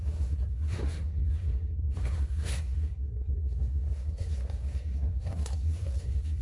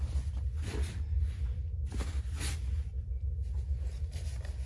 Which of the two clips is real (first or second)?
second